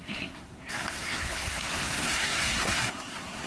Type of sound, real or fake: fake